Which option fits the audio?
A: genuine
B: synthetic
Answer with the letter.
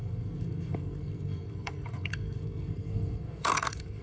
B